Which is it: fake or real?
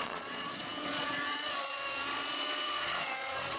fake